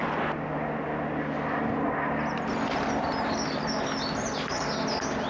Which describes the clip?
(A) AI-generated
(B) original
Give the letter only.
B